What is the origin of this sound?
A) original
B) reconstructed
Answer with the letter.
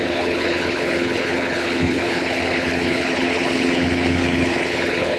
B